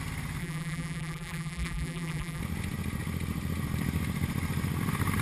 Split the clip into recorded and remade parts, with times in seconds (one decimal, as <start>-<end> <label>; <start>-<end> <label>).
0.0-0.4 recorded; 0.4-2.4 remade; 2.4-5.2 recorded